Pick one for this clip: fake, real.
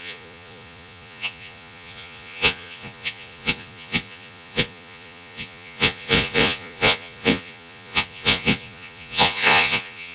fake